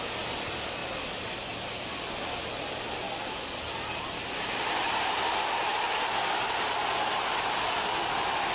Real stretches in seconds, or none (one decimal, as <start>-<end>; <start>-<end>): 0.0-8.5